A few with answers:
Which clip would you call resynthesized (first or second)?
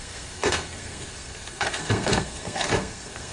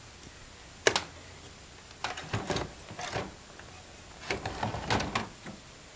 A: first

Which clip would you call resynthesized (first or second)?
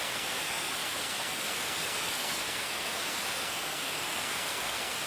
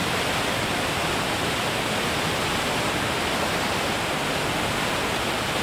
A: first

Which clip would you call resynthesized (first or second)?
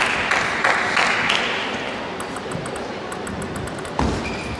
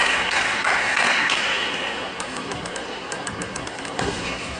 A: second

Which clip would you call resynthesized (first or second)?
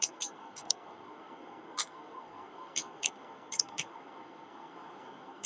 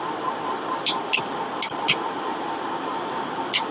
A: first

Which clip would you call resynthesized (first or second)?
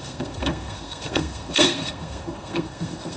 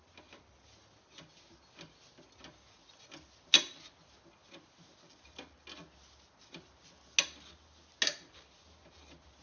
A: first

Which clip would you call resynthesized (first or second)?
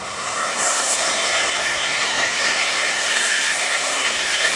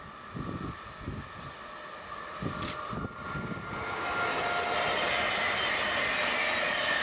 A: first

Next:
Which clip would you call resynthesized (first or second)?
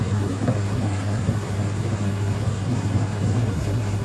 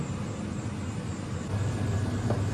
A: first